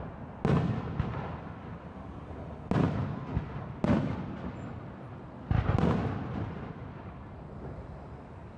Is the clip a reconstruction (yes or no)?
no